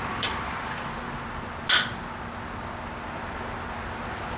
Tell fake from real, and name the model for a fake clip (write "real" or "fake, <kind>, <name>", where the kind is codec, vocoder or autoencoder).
real